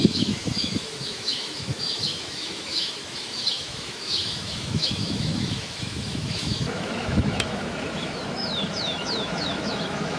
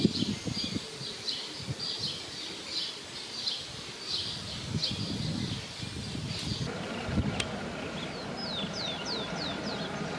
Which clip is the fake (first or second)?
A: first